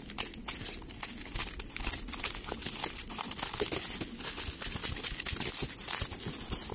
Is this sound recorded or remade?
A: recorded